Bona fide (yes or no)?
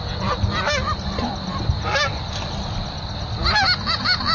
yes